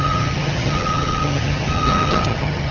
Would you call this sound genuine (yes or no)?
no